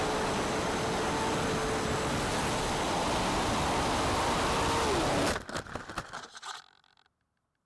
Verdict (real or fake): real